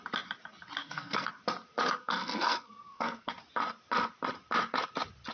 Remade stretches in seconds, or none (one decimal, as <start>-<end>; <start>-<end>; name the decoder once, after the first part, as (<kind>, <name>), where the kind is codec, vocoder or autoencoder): 0.8-1.3 (codec, SNAC); 2.0-3.3